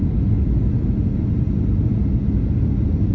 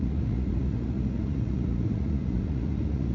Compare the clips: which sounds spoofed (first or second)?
second